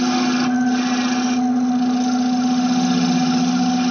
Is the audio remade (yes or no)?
no